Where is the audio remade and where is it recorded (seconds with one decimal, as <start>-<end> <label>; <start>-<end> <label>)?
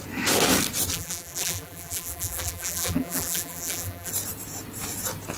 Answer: 0.0-0.9 recorded; 0.9-4.1 remade; 4.1-5.4 recorded